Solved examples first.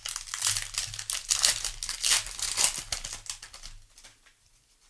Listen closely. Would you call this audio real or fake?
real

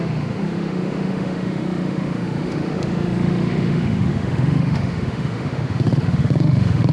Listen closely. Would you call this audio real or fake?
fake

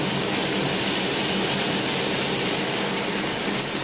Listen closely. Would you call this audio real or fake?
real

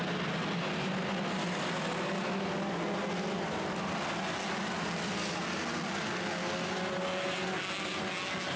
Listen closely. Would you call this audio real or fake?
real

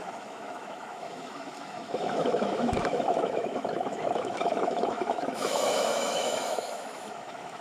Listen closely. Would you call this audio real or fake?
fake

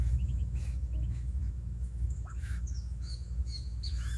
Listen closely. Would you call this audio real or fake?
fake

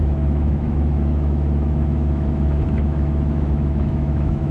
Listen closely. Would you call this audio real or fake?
fake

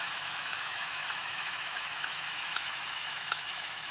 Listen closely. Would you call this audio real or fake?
fake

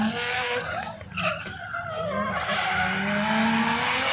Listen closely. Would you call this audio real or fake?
real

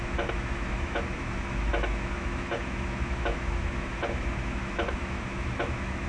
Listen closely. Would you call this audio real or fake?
fake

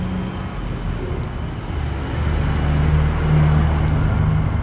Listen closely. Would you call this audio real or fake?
real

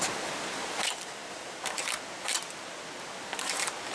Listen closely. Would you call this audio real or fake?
real